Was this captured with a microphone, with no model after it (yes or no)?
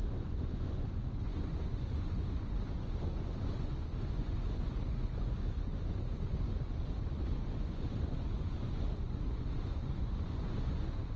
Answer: no